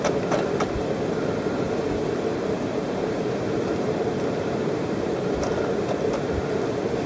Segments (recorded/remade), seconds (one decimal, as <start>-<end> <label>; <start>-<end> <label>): 0.0-2.8 recorded; 2.8-5.1 remade; 5.1-7.1 recorded